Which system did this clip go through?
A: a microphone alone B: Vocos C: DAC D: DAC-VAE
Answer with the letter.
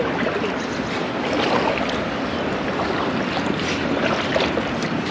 A